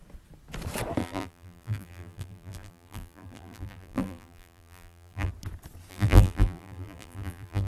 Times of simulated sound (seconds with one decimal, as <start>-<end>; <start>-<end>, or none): 1.0-5.3; 5.9-7.7